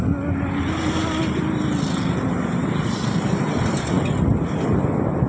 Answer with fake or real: real